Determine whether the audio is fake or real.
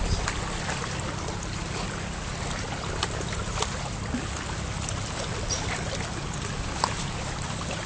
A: real